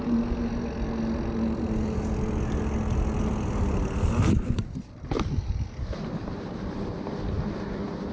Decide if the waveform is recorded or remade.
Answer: recorded